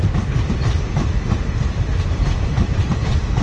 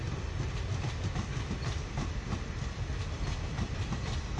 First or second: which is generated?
first